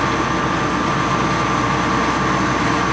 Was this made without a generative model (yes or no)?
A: yes